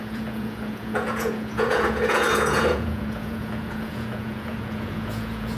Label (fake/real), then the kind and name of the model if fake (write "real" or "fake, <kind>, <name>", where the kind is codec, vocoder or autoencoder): fake, vocoder, Vocos